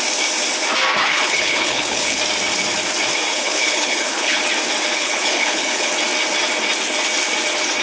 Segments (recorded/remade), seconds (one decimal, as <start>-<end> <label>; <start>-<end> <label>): 0.0-1.0 recorded; 1.0-2.2 remade; 2.2-3.3 recorded; 3.3-4.4 remade; 4.4-4.9 recorded; 4.9-5.9 remade; 5.9-7.8 recorded